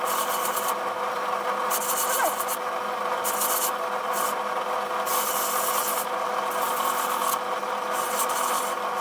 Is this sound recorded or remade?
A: recorded